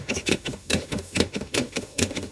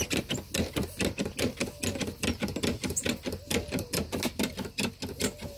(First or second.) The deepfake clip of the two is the first